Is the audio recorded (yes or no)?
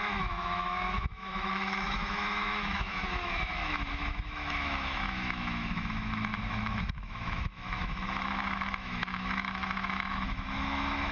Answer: no